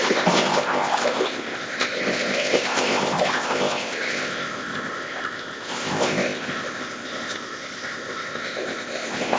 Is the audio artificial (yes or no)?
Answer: yes